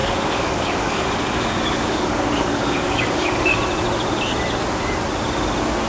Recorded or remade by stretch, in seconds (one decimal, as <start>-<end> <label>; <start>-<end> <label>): 0.0-3.5 remade; 3.5-5.9 recorded